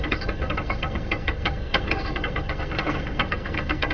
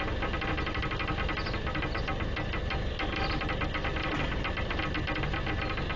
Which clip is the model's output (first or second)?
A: first